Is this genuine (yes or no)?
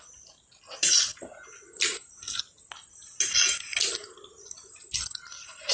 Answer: yes